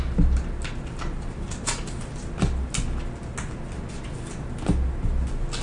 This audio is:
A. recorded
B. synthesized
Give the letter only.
A